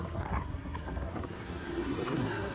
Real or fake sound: fake